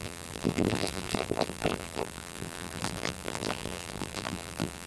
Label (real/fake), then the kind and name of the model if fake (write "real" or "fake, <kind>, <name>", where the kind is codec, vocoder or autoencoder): fake, vocoder, BigVGAN v2